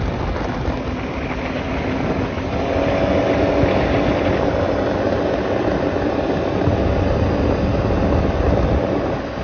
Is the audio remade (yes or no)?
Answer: no